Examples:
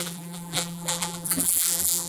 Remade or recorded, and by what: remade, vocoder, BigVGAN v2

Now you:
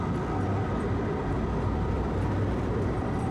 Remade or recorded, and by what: remade, vocoder, BigVGAN v2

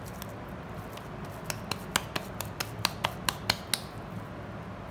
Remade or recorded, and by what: recorded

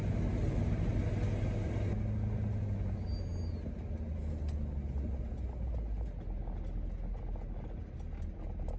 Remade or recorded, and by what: recorded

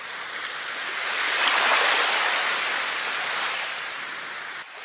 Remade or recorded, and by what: recorded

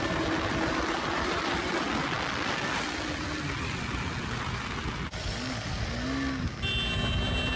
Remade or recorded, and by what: recorded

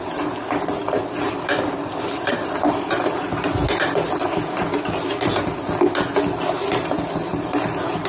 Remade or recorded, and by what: recorded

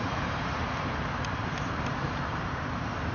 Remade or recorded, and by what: remade, vocoder, BigVGAN v2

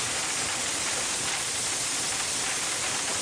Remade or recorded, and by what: recorded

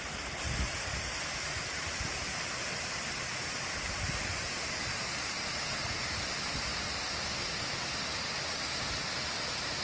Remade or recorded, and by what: recorded